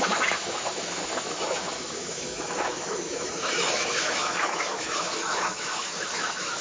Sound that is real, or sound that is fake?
fake